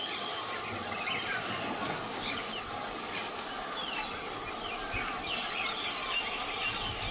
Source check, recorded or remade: recorded